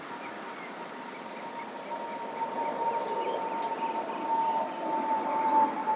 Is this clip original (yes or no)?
yes